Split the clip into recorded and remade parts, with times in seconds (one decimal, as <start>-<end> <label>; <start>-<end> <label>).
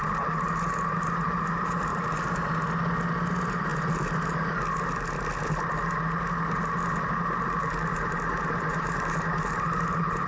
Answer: 0.0-1.9 remade; 1.9-3.3 recorded; 3.3-3.7 remade; 3.7-7.9 recorded; 7.9-10.3 remade